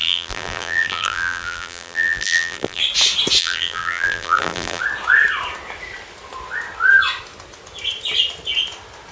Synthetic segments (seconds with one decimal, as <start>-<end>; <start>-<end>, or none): 0.0-2.8; 3.4-4.8